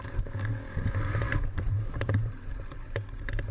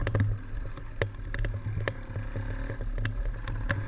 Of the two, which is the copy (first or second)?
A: first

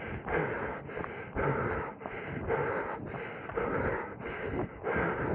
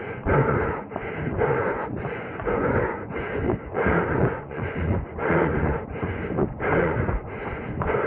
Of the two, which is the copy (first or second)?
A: second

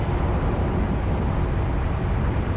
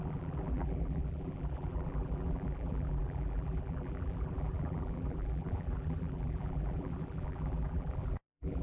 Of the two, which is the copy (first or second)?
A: second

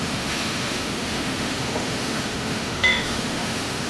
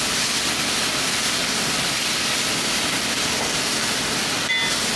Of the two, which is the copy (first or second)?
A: first